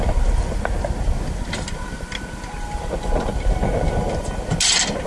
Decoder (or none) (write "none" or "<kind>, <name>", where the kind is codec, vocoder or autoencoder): none